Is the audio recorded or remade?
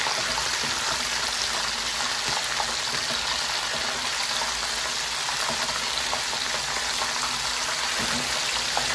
recorded